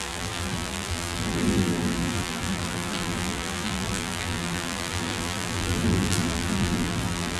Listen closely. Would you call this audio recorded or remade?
remade